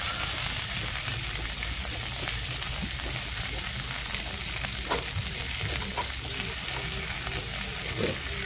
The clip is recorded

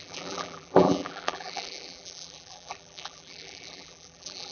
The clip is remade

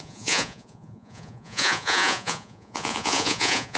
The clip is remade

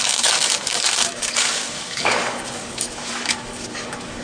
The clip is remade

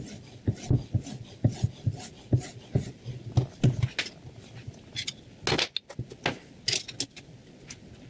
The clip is recorded